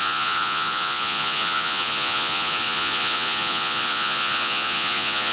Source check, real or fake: fake